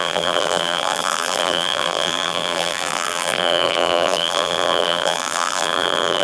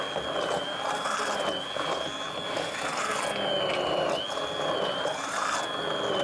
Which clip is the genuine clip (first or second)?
second